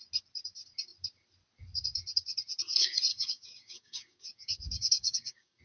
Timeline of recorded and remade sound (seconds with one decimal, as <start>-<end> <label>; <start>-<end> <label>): 0.0-3.1 recorded; 3.1-5.6 remade